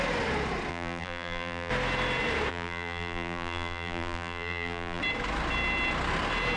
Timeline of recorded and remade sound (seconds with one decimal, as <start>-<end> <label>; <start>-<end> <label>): 0.0-0.7 recorded; 0.7-1.7 remade; 1.7-2.5 recorded; 2.5-5.0 remade; 5.0-6.6 recorded